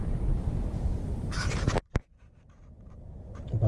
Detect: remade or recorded remade